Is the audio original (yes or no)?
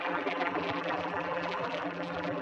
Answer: no